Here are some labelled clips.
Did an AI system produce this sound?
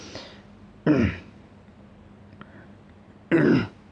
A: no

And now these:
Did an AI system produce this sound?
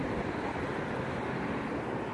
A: no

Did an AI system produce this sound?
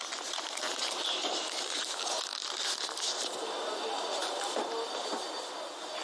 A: no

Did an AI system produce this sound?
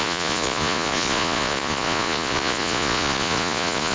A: yes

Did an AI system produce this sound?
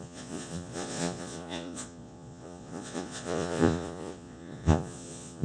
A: yes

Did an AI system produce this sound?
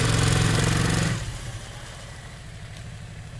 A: yes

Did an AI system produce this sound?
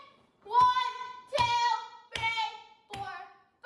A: no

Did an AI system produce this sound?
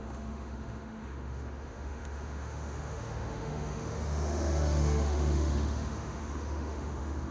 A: yes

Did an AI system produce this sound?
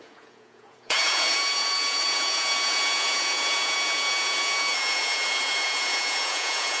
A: yes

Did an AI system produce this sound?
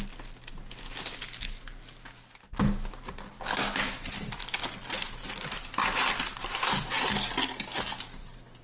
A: no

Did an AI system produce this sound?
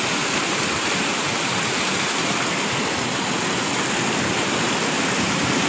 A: no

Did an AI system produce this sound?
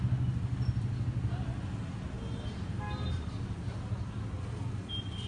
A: no